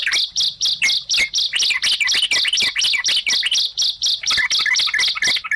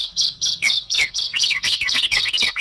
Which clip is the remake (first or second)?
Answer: second